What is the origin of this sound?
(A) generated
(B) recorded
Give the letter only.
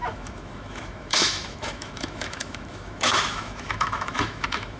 A